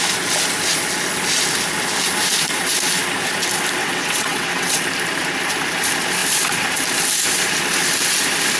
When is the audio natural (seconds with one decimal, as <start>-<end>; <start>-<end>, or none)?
0.0-3.8; 4.8-8.6